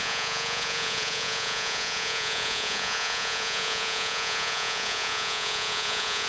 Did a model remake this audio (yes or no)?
yes